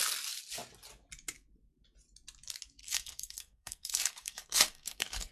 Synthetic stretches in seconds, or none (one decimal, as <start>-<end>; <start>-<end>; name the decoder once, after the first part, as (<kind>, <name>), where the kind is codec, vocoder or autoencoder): 2.8-5.3 (codec, SNAC)